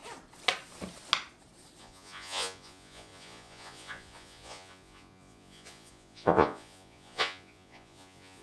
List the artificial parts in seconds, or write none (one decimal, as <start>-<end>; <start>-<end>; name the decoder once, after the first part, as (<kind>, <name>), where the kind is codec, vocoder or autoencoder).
1.8-8.4 (vocoder, Vocos)

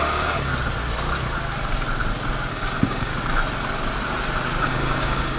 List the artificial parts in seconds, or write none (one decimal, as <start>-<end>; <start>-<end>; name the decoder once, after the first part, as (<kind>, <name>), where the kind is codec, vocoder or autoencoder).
0.0-0.5 (codec, DAC); 2.5-3.1; 4.6-5.4

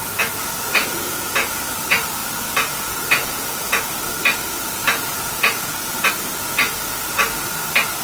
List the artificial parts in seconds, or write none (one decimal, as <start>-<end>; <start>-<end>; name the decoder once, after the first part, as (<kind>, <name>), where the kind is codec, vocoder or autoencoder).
0.8-1.5 (vocoder, Vocos); 2.2-3.8; 4.8-6.1